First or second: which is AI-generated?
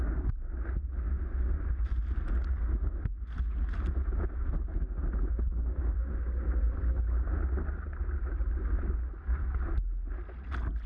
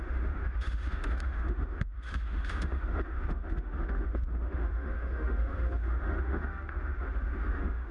second